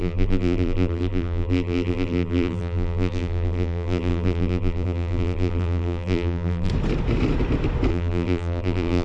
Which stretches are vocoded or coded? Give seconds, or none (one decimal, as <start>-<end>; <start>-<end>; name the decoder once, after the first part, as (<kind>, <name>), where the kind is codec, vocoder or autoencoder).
0.0-6.7 (vocoder, BigVGAN v2); 7.9-9.0

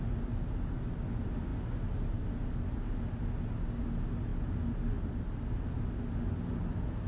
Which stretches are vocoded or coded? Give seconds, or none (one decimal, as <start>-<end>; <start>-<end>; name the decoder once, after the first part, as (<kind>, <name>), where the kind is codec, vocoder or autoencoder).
none